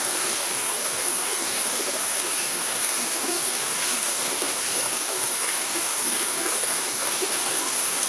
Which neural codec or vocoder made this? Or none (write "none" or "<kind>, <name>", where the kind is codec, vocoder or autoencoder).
codec, DAC